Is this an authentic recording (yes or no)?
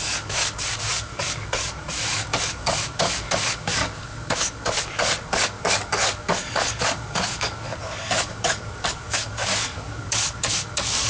no